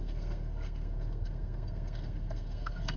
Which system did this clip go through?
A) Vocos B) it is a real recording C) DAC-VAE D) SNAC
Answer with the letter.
D